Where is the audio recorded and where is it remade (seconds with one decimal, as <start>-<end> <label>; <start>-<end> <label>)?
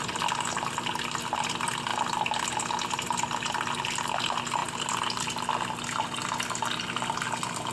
0.0-7.7 recorded